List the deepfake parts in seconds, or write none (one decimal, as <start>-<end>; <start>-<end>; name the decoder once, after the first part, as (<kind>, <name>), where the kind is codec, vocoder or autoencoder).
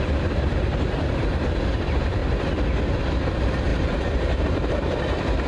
0.0-2.2 (vocoder, BigVGAN v2); 3.1-5.5